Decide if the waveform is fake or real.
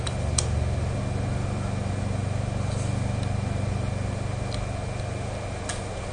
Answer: real